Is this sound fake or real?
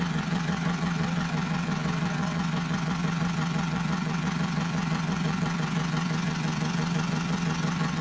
fake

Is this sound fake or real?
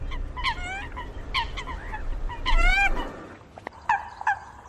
real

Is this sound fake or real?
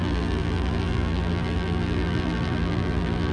fake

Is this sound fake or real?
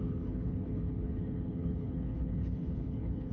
fake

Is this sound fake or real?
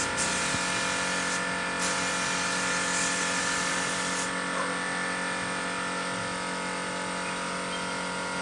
real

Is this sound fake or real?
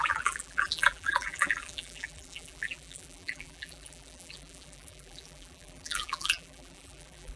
fake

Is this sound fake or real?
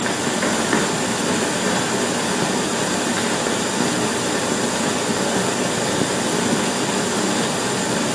real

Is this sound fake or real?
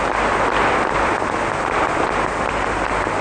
real